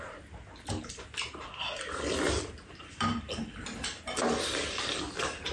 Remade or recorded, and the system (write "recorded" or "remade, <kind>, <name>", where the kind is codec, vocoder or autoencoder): recorded